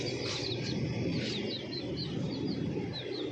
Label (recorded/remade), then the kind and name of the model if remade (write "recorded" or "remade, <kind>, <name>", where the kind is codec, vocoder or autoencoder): remade, vocoder, BigVGAN v2